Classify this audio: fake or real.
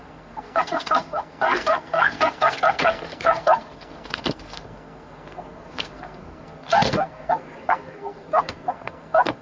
fake